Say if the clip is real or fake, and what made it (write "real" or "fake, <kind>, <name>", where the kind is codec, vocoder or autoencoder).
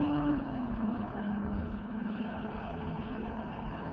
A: fake, codec, HILCodec